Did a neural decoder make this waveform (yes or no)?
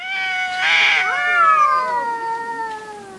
no